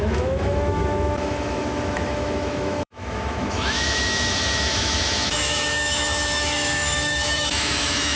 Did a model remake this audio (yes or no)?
yes